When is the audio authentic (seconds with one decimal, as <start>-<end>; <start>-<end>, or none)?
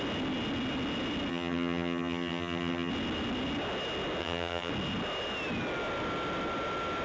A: 0.0-1.3; 2.9-4.2; 4.7-7.0